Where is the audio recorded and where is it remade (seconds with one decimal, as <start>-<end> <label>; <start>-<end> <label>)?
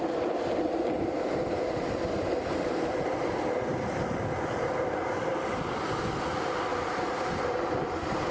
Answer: 0.0-8.3 recorded